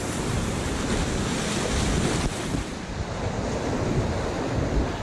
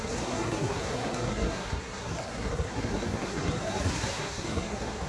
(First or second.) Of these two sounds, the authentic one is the first